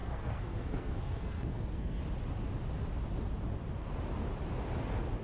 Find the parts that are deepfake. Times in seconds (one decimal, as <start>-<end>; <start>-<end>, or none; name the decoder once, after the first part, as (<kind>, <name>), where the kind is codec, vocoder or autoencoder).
0.0-2.0 (codec, SNAC)